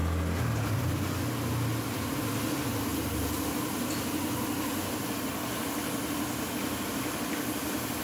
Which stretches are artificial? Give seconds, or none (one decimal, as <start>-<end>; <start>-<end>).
none